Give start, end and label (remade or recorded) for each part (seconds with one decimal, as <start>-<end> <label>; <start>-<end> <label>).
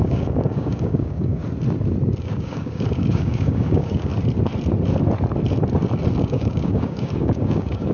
0.0-1.4 remade; 1.4-2.2 recorded; 2.2-4.1 remade; 4.1-6.2 recorded; 6.2-7.9 remade